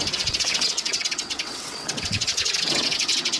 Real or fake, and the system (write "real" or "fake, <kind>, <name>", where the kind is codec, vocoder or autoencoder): fake, vocoder, WaveNeXt